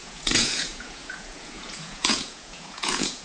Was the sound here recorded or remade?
remade